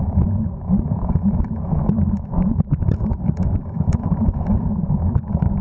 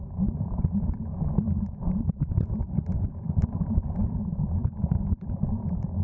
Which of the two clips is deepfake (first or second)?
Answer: first